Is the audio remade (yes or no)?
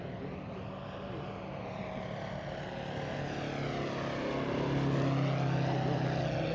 no